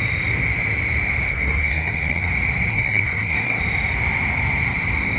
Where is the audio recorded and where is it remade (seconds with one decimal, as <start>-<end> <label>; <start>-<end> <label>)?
0.0-1.3 recorded; 1.3-2.3 remade; 2.3-2.7 recorded; 2.7-3.6 remade; 3.6-5.2 recorded